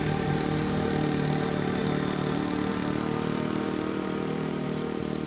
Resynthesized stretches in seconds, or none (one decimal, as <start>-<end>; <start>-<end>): 0.0-5.3